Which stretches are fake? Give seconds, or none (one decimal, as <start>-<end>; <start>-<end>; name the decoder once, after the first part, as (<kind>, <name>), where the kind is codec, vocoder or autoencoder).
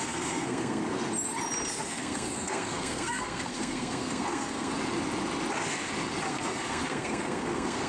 0.0-0.8 (codec, SNAC); 1.9-4.7; 6.3-7.9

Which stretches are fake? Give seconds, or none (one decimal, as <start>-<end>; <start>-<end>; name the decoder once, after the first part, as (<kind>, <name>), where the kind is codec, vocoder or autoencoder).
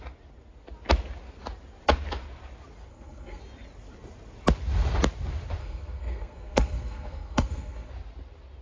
2.9-3.4 (codec, SNAC); 5.6-7.9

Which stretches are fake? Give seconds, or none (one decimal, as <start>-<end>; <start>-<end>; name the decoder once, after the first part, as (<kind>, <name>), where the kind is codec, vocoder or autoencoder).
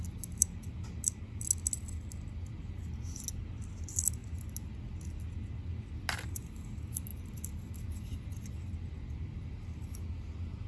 none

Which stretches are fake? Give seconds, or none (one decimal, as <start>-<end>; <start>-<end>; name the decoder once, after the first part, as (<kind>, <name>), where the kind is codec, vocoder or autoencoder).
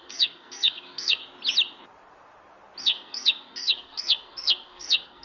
0.0-1.2 (codec, SNAC); 2.8-5.2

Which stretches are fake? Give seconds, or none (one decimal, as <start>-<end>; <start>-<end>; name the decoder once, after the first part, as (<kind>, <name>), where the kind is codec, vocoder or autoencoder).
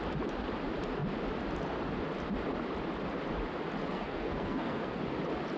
3.9-5.0 (codec, SNAC)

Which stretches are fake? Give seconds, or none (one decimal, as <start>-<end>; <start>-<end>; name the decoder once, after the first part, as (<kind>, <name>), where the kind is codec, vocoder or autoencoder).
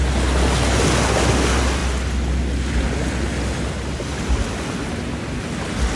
none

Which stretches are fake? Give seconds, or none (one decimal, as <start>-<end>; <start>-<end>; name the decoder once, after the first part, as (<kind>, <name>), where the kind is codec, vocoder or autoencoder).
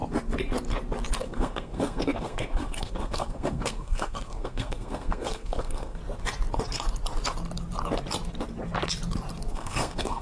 1.2-6.0 (codec, SNAC); 9.5-10.2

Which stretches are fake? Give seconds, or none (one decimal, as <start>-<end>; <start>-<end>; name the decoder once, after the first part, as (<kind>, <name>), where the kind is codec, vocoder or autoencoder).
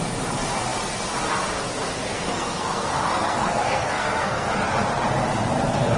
2.1-4.5 (codec, SNAC)